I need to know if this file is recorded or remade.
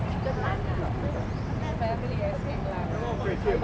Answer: recorded